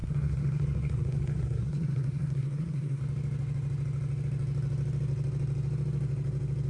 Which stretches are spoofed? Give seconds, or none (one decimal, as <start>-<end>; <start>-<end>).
0.0-3.0

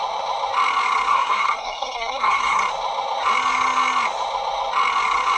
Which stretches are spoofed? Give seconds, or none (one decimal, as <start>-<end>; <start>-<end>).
1.1-2.6

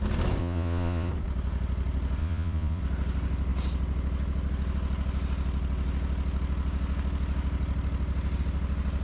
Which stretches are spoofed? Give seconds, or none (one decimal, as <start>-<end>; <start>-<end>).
0.4-1.1; 2.2-2.8